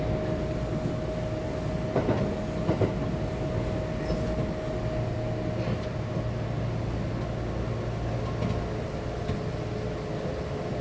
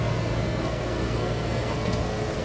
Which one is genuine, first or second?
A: first